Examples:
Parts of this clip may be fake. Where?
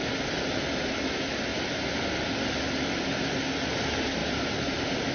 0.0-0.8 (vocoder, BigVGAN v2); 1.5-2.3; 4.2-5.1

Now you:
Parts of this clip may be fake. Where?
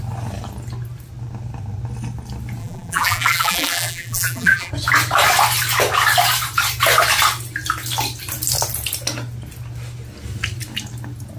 2.6-4.7 (vocoder, BigVGAN v2)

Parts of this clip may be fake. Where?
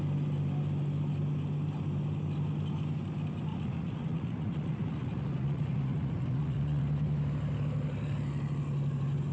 3.5-6.8 (vocoder, Vocos)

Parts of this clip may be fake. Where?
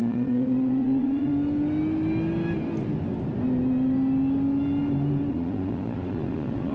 0.0-1.3 (vocoder, Vocos); 5.3-6.7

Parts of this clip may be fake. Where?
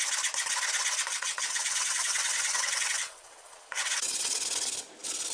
1.1-4.3 (vocoder, WaveNeXt)